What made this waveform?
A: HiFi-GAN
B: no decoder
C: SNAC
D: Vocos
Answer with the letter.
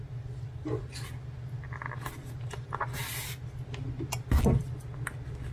B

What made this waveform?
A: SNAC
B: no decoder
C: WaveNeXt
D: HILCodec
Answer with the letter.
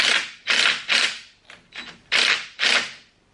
B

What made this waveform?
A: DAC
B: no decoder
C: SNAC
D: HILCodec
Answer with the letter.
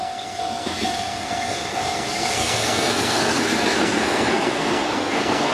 C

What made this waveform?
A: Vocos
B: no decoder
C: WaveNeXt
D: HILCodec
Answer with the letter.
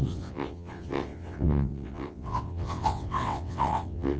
C